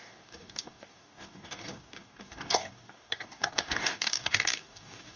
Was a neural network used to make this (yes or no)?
yes